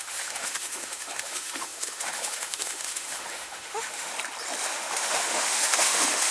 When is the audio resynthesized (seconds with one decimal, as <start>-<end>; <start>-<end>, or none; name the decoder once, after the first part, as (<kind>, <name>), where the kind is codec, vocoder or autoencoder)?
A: 0.0-4.1 (autoencoder, DAC-VAE); 4.7-6.3